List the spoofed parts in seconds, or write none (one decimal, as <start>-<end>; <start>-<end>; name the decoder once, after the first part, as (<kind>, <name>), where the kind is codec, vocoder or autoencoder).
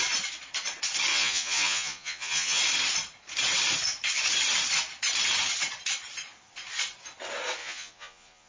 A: 1.1-2.6 (vocoder, Vocos); 7.6-8.5